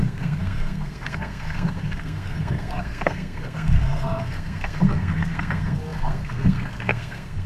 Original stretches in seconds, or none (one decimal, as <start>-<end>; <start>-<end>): none